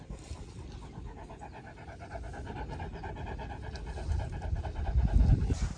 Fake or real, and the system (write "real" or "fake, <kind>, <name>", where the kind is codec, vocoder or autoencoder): real